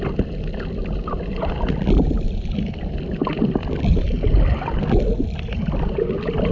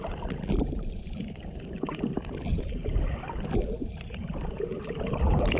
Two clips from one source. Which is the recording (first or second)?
first